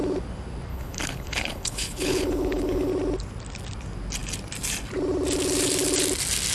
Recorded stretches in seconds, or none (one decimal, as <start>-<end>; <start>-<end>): 0.0-0.7; 2.9-6.5